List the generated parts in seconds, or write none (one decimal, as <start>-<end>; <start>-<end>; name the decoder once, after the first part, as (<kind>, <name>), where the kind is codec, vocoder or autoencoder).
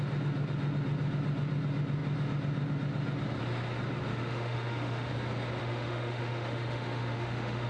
4.1-5.1 (autoencoder, DAC-VAE); 5.6-7.7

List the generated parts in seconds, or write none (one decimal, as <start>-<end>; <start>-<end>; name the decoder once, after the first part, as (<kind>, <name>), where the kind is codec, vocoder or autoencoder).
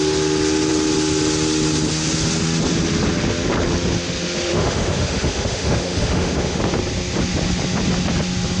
4.5-6.6 (autoencoder, DAC-VAE)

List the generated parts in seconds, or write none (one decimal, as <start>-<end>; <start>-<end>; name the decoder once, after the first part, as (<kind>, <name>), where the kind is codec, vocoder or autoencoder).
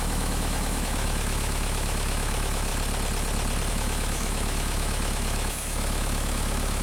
0.0-2.7 (autoencoder, DAC-VAE); 3.7-6.8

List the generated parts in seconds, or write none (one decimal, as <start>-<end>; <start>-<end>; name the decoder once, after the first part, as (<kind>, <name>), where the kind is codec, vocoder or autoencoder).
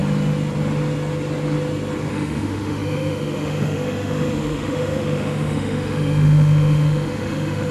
2.1-7.7 (autoencoder, DAC-VAE)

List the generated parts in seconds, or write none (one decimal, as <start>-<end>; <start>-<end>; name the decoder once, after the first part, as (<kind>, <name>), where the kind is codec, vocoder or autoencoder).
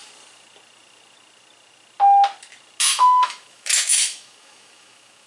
2.8-5.3 (autoencoder, DAC-VAE)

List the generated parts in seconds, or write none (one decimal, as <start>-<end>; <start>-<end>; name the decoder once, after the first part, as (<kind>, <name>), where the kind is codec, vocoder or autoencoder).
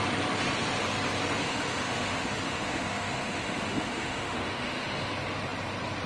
1.4-5.1 (autoencoder, DAC-VAE)